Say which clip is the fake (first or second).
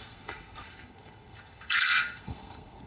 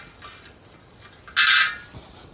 first